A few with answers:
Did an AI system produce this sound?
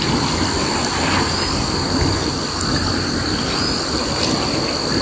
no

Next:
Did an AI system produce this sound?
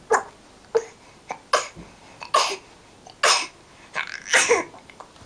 no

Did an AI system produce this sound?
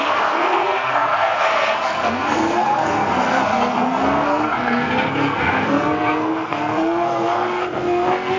yes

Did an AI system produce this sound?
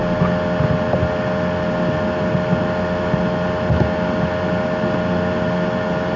no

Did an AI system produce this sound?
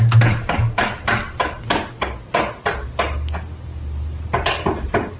no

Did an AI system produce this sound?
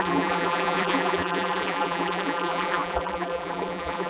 yes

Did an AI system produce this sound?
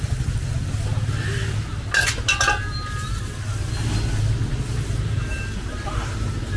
no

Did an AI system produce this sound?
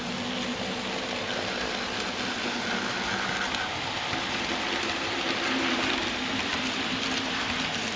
no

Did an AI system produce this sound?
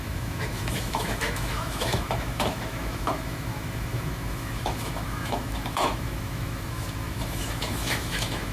yes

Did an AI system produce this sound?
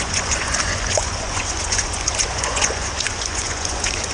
yes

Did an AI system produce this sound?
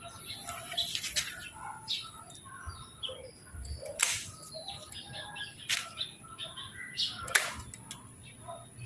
no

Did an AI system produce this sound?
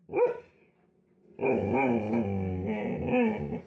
no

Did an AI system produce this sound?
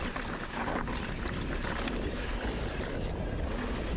no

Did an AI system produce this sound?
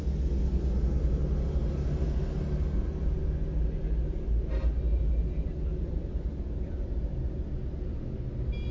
no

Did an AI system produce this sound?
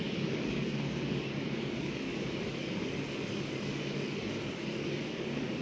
yes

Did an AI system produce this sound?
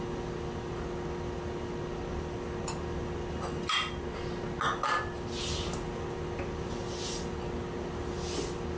no